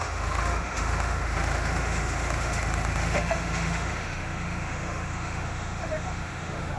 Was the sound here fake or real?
fake